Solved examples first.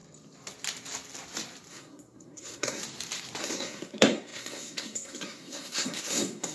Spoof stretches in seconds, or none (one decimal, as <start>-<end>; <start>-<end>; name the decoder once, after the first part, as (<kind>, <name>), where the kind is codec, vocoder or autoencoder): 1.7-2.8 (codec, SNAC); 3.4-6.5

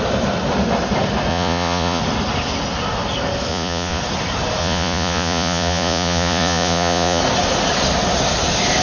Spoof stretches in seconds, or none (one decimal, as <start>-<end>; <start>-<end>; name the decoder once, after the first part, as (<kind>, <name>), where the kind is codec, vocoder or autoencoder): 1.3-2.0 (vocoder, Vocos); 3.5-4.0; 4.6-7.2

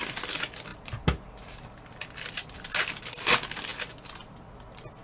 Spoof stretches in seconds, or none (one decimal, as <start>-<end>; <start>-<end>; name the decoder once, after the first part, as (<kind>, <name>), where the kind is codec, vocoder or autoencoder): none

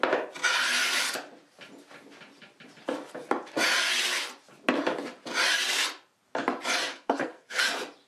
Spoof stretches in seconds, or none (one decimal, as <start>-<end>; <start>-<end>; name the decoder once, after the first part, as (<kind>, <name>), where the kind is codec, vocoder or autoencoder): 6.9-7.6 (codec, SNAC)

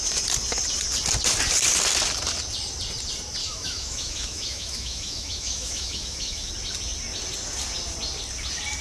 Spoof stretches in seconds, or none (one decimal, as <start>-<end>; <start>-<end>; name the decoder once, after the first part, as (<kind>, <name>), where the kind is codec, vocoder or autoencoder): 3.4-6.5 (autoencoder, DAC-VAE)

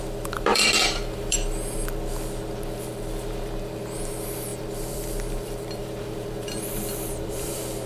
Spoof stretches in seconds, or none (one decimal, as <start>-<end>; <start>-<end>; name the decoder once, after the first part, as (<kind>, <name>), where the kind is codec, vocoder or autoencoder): 0.0-7.9 (vocoder, BigVGAN v2)